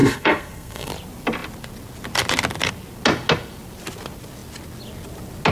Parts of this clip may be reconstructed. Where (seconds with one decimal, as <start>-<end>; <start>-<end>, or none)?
0.0-0.9